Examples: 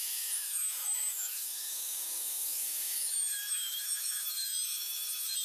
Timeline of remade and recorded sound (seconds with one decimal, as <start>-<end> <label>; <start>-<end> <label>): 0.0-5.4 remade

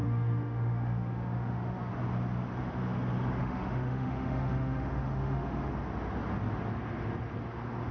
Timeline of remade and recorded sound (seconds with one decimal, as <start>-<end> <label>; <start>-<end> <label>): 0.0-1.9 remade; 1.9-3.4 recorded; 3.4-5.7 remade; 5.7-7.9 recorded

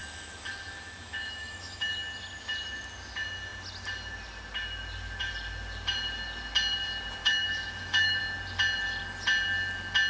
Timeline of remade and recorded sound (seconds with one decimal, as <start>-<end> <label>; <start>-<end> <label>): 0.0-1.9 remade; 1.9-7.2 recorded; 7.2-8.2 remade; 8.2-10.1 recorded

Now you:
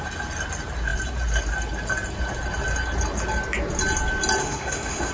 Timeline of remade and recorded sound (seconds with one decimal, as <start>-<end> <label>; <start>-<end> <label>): 0.0-4.4 recorded; 4.4-5.1 remade